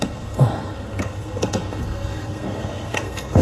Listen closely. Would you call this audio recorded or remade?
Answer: remade